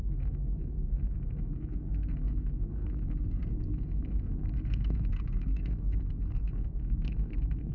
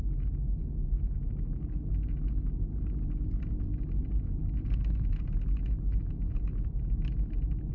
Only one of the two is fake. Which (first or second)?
first